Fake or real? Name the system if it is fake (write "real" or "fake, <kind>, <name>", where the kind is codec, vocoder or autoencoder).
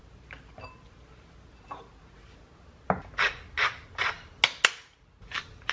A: real